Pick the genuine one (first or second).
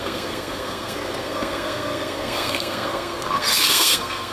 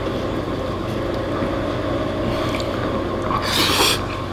second